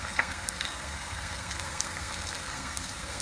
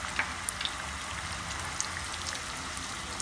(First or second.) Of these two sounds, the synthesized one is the first